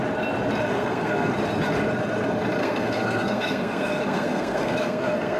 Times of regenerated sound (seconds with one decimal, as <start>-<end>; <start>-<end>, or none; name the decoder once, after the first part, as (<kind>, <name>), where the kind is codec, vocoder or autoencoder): 0.7-1.3 (codec, SNAC); 2.6-5.4